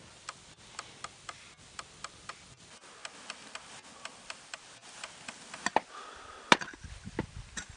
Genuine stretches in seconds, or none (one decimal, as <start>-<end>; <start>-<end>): 0.0-7.8